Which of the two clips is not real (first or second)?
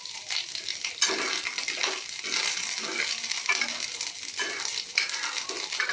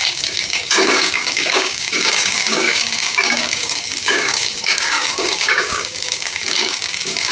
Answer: second